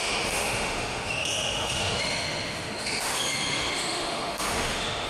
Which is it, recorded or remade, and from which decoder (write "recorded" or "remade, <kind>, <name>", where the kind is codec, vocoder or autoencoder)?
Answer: remade, autoencoder, DAC-VAE